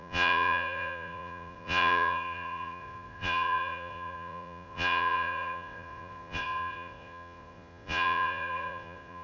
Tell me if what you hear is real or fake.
fake